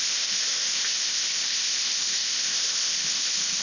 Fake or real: fake